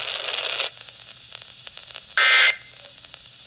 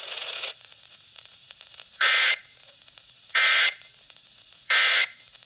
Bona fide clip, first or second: first